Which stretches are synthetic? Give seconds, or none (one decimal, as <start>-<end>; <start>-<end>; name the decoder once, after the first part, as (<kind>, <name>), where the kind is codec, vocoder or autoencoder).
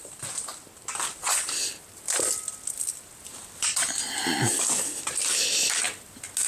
none